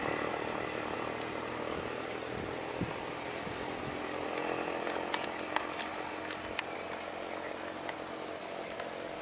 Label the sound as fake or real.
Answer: real